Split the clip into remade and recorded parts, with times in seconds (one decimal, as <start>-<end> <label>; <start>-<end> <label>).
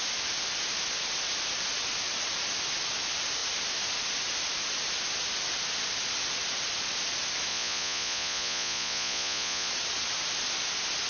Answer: 0.0-7.5 recorded; 7.5-9.7 remade; 9.7-11.1 recorded